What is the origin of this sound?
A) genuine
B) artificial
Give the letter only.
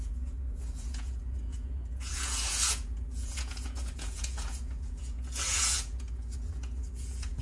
B